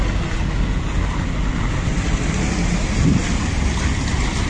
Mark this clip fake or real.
real